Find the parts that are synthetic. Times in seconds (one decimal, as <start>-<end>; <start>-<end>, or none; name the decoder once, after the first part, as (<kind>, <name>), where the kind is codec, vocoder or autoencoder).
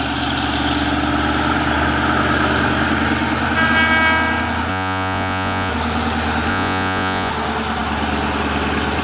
4.7-5.7 (vocoder, Vocos); 6.5-7.3